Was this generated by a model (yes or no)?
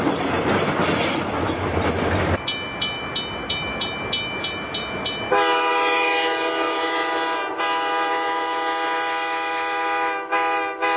no